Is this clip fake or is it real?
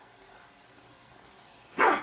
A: fake